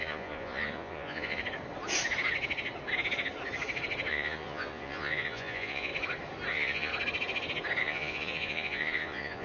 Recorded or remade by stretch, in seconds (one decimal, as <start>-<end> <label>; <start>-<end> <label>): 0.0-1.4 remade; 1.4-4.1 recorded; 4.1-5.9 remade; 5.9-6.5 recorded; 6.5-6.9 remade; 6.9-7.8 recorded; 7.8-9.4 remade